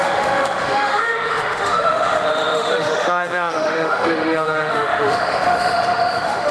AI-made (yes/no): yes